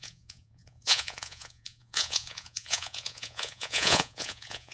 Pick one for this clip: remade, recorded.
remade